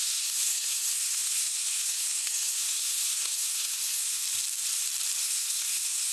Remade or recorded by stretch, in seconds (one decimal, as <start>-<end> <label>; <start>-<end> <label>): 0.0-4.2 remade; 4.2-5.2 recorded; 5.2-6.1 remade